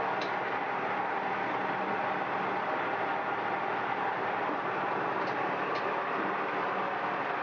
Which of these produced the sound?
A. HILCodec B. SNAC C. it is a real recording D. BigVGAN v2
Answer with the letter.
C